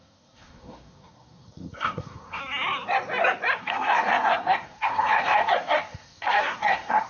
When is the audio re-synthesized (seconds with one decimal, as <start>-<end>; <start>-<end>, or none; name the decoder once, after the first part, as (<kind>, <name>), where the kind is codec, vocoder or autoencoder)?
0.0-2.4 (codec, SNAC); 3.6-7.1